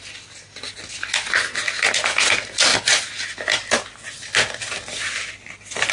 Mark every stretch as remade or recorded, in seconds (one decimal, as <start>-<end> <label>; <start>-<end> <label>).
0.0-5.9 recorded